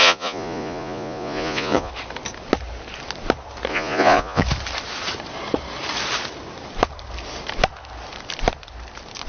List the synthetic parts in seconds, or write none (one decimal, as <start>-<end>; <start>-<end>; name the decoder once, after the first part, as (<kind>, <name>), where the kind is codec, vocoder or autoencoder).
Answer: 0.0-1.9 (vocoder, Vocos); 3.7-4.4

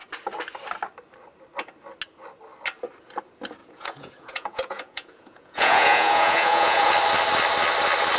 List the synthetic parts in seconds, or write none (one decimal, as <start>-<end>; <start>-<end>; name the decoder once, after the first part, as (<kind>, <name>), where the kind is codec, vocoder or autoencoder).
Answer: 3.6-6.9 (vocoder, Vocos)